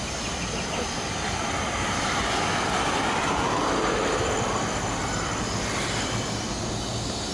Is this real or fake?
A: real